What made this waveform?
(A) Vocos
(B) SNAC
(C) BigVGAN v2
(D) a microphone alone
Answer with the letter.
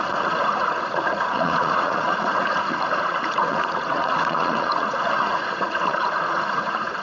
A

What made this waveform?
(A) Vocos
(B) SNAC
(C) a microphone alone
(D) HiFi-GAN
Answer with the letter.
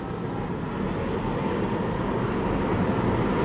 C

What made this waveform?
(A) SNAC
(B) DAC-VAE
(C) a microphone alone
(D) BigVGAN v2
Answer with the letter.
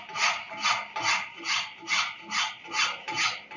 C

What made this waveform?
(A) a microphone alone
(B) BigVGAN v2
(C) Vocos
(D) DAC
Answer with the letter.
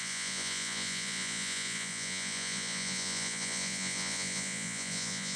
C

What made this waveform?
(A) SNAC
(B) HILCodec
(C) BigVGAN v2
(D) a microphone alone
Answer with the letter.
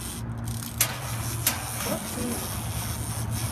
D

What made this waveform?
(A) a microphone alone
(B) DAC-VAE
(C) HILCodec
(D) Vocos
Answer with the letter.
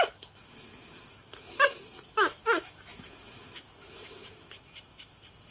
B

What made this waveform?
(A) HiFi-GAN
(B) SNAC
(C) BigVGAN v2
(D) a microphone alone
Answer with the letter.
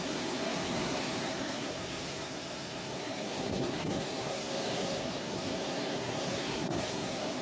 B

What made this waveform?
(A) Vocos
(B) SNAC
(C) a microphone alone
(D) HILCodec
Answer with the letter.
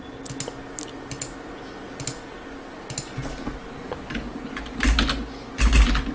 C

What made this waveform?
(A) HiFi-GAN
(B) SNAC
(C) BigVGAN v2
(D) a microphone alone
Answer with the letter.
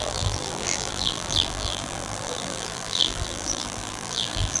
C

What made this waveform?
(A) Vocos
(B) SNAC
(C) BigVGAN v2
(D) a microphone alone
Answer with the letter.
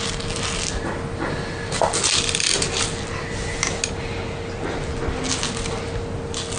D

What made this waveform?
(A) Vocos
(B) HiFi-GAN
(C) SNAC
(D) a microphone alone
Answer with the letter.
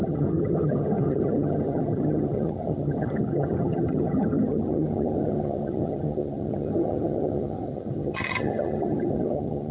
B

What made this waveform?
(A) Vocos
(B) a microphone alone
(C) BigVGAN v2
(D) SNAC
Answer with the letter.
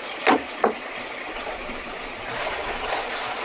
A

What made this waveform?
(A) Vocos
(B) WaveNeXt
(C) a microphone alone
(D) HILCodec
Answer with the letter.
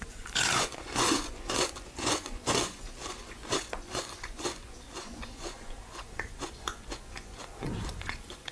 A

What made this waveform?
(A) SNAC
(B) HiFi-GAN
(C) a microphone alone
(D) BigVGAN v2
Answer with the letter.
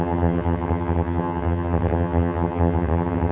B